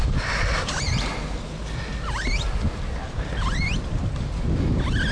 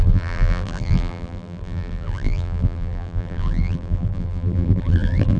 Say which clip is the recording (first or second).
first